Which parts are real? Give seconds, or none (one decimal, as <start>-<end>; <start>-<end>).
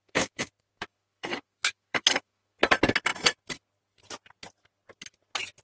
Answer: 2.6-5.6